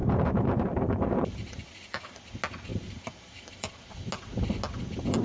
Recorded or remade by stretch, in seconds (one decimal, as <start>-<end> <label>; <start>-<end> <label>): 0.0-2.2 remade; 2.2-2.7 recorded; 2.7-3.8 remade; 3.8-5.2 recorded